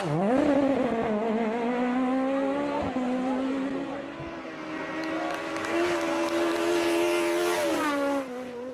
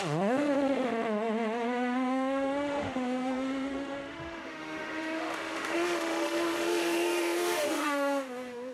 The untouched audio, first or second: first